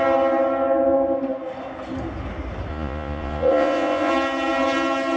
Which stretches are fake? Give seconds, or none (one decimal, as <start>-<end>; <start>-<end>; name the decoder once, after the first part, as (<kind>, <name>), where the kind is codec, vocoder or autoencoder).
2.7-4.1 (vocoder, Vocos)